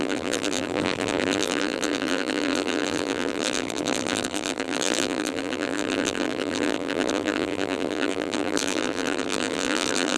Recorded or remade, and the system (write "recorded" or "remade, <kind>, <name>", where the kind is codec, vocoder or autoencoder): remade, vocoder, BigVGAN v2